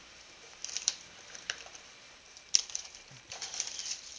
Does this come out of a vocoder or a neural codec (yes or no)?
yes